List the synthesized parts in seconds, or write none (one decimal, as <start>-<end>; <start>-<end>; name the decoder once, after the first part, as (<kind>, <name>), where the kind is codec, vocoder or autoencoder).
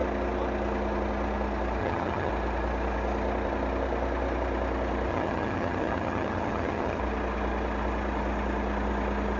1.8-2.3 (vocoder, HiFi-GAN); 5.1-7.0